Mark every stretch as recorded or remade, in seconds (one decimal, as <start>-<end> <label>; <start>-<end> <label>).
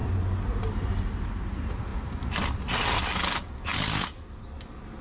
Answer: 0.0-5.0 recorded